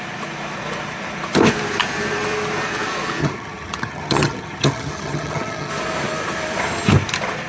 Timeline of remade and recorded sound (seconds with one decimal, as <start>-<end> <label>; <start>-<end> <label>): 0.0-3.2 recorded; 3.2-5.7 remade; 5.7-7.5 recorded